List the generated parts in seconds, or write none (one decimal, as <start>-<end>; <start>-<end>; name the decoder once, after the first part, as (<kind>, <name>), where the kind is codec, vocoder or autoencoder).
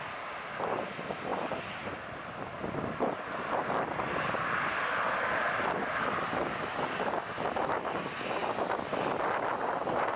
none